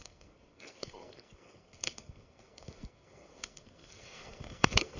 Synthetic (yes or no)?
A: yes